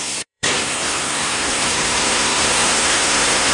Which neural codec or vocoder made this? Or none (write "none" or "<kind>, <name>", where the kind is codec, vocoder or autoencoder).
codec, SNAC